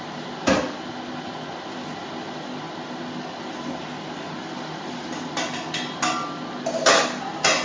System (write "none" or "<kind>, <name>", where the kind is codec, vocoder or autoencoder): none